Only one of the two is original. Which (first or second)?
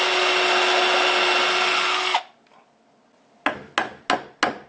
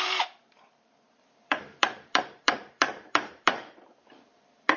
first